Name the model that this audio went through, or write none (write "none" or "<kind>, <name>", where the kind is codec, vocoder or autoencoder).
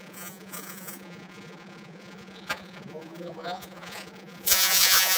vocoder, Vocos